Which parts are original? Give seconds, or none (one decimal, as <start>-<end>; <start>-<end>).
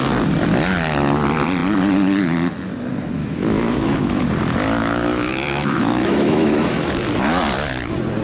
0.0-3.2; 4.3-4.8; 6.9-8.2